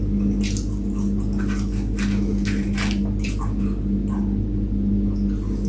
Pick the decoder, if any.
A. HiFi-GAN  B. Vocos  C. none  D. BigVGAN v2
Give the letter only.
C